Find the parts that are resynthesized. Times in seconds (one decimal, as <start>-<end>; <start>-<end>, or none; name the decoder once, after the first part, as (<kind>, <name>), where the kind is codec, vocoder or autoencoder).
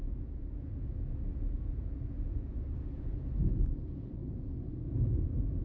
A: 0.0-5.6 (vocoder, Vocos)